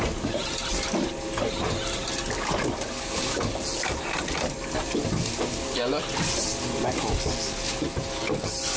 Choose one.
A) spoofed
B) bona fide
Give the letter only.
B